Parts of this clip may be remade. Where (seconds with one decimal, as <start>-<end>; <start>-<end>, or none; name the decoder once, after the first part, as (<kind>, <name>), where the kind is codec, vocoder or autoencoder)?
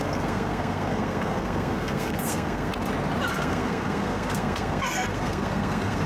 0.0-2.7 (codec, SNAC); 3.3-6.1